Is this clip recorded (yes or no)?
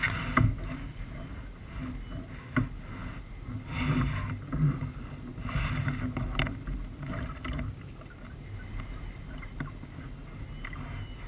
yes